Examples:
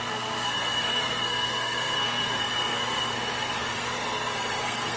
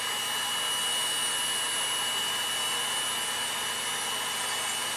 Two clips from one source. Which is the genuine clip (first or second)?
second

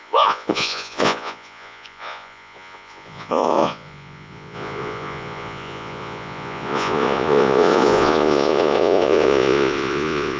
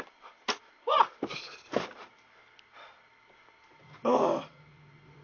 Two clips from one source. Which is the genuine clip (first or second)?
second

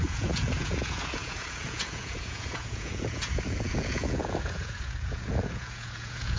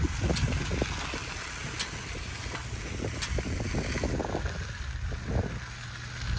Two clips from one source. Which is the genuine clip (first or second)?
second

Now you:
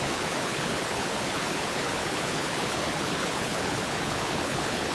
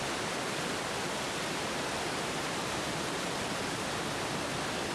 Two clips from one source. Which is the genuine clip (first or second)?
second